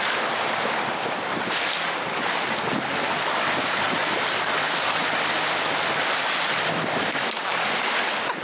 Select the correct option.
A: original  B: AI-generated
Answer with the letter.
A